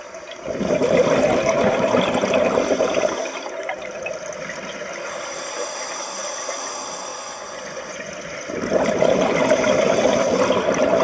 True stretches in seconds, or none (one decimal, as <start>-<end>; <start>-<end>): 0.0-7.1; 8.1-11.0